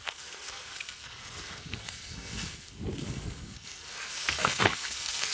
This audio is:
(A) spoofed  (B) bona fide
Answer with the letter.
A